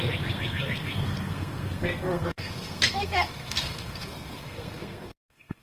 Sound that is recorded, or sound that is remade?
remade